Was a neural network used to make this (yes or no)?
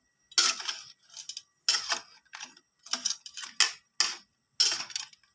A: no